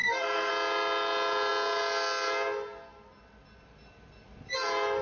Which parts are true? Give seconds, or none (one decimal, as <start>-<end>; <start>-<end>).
0.5-5.0